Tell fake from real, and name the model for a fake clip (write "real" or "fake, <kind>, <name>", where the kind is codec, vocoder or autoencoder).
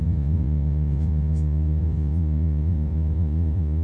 fake, vocoder, Vocos